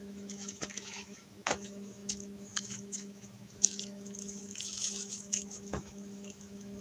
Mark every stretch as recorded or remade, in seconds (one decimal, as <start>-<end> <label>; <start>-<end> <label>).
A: 0.0-6.8 remade